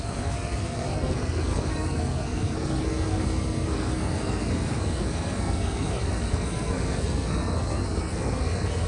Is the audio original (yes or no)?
no